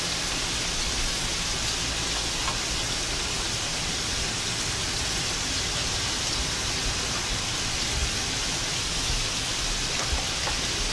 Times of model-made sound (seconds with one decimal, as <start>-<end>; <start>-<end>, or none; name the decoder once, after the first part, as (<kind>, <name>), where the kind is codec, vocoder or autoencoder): none